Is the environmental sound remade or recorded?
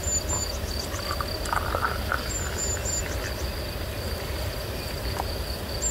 recorded